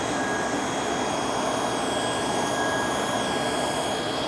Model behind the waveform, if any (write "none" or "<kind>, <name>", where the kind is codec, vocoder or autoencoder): none